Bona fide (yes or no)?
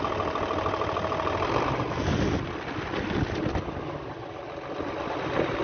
yes